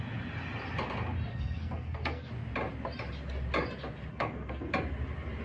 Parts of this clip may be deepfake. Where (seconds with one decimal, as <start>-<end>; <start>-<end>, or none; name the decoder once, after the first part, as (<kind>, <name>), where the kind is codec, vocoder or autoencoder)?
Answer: 1.3-2.3 (codec, SNAC); 4.1-4.7